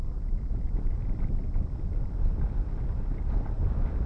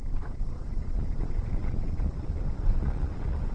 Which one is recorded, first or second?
first